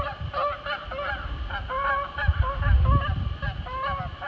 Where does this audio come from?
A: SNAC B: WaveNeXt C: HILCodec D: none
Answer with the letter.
D